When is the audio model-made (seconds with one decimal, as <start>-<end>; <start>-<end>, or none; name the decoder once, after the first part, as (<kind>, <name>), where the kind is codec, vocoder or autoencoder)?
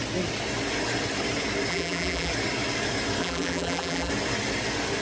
1.7-2.3 (vocoder, BigVGAN v2); 3.2-4.1